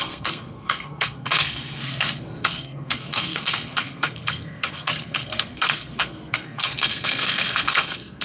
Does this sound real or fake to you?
fake